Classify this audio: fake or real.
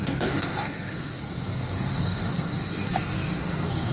fake